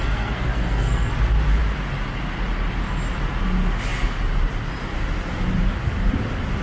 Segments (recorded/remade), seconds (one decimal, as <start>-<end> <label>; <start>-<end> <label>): 0.0-1.1 remade; 1.1-6.6 recorded